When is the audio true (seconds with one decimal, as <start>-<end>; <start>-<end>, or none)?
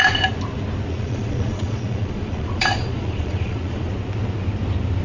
0.0-0.9; 3.9-5.0